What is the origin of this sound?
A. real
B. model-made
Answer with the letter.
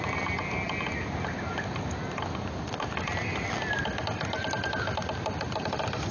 A